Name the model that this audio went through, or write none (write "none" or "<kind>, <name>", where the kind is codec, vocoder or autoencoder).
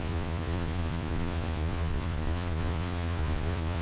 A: vocoder, Vocos